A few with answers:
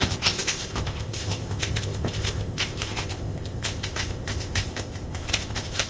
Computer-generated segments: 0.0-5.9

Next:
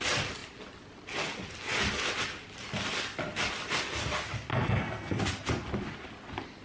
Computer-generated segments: 4.5-5.2

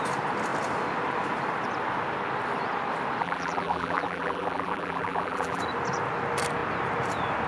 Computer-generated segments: 3.2-5.6

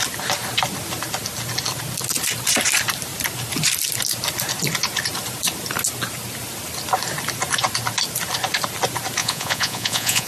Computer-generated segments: 9.2-10.3